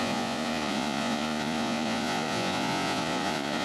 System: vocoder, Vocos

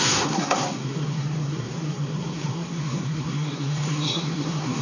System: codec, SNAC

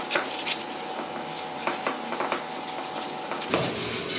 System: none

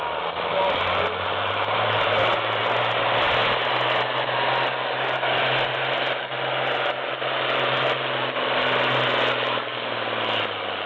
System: none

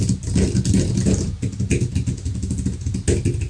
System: none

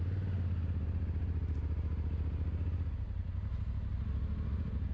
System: none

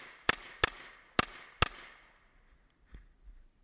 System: none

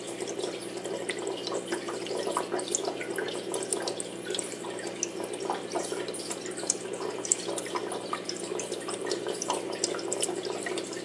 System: none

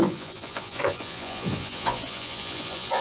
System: vocoder, Vocos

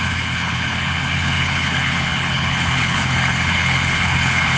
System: codec, HILCodec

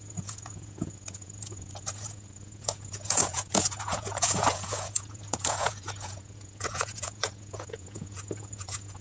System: vocoder, Vocos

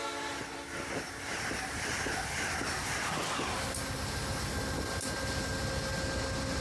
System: none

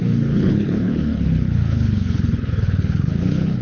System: codec, HILCodec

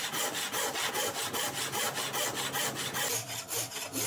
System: none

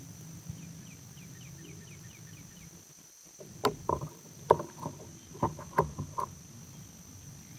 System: vocoder, BigVGAN v2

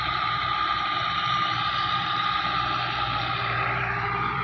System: vocoder, BigVGAN v2